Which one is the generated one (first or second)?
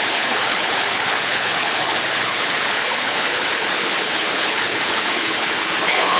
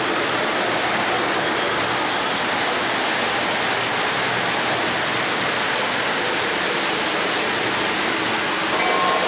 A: first